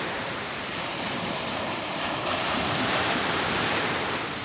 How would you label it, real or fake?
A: fake